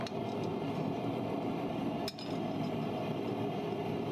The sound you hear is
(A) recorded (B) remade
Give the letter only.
B